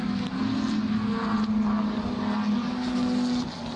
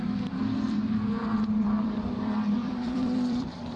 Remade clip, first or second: second